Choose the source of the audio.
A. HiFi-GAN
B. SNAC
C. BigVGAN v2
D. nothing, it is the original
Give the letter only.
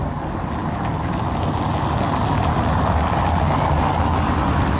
D